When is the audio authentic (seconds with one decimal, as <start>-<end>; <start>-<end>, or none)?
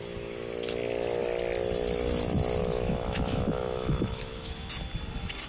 0.0-2.6; 4.7-5.5